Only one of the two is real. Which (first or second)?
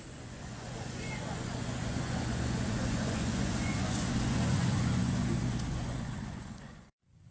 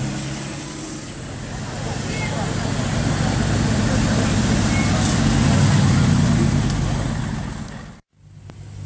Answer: second